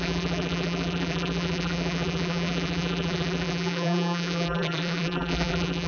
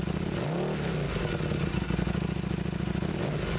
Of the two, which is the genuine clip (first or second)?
second